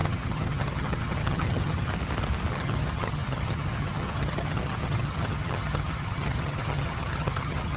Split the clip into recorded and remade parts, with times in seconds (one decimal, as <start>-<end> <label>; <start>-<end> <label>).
0.0-1.9 remade; 1.9-2.5 recorded; 2.5-7.8 remade